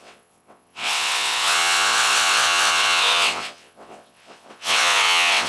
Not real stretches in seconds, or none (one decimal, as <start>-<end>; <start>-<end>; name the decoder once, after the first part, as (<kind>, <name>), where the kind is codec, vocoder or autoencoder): 0.0-5.5 (vocoder, WaveNeXt)